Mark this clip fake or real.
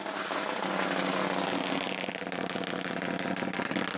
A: real